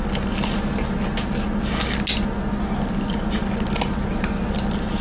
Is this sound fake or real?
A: real